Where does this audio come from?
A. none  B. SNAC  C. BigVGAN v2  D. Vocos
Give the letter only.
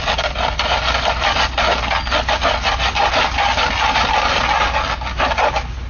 A